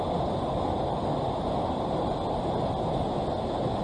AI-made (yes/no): no